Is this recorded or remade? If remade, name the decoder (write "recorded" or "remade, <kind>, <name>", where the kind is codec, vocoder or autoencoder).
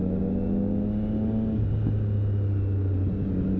recorded